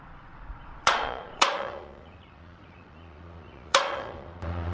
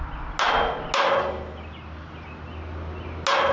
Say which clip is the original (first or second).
second